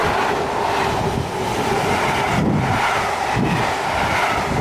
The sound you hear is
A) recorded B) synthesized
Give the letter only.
A